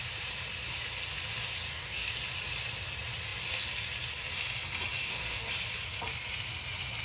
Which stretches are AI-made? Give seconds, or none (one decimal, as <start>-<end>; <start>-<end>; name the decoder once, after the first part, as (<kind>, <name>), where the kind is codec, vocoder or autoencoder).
1.7-2.2 (codec, DAC); 5.0-5.5